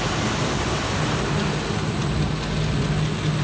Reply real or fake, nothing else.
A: real